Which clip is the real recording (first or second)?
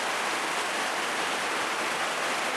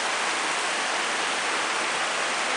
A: second